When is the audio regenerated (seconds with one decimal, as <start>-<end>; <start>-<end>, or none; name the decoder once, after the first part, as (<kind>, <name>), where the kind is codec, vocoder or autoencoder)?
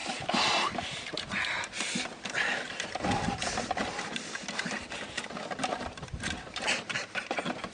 none